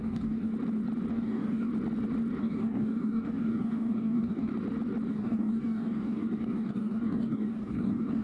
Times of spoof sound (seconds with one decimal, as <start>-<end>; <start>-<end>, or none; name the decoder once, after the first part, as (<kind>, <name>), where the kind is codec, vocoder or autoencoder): 0.0-0.5 (codec, DAC); 1.1-1.7; 2.4-4.5; 5.1-8.2